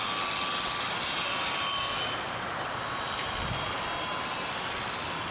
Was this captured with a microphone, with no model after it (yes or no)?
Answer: no